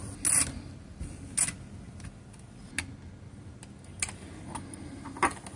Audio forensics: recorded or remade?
recorded